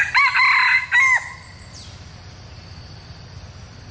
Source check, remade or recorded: recorded